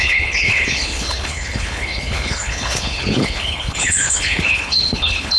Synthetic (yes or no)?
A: yes